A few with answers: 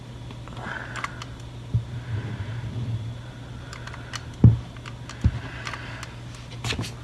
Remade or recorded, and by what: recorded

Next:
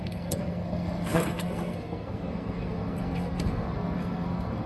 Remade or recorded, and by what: remade, codec, SNAC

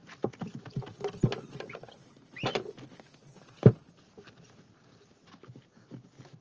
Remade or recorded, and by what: recorded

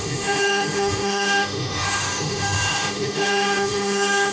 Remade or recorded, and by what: remade, autoencoder, DAC-VAE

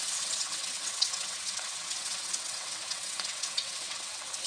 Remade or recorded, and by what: remade, vocoder, WaveNeXt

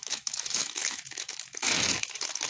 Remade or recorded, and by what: remade, autoencoder, DAC-VAE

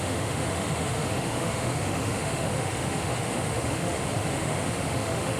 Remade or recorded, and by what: remade, autoencoder, DAC-VAE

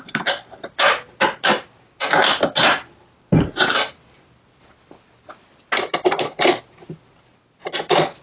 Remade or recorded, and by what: recorded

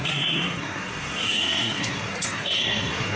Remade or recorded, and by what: remade, codec, SNAC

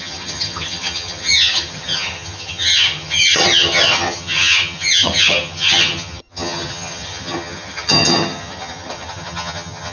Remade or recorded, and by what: remade, vocoder, HiFi-GAN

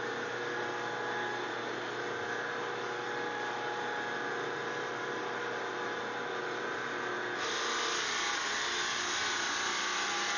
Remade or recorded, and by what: recorded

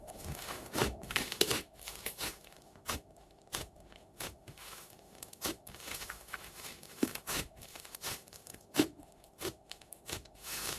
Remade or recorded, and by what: remade, autoencoder, DAC-VAE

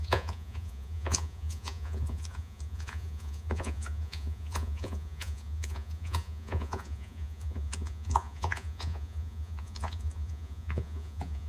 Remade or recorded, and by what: remade, vocoder, Vocos